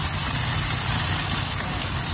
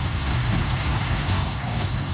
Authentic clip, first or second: first